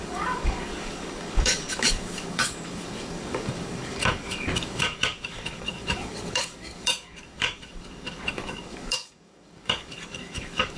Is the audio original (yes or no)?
no